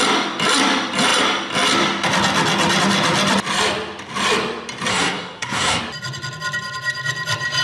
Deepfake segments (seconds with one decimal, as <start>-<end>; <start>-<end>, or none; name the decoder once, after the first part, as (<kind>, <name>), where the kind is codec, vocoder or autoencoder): 4.9-5.8 (codec, SNAC)